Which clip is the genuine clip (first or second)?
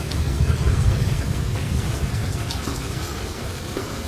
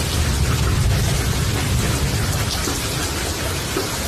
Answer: second